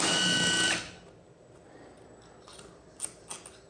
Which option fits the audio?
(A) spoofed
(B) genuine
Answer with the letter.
B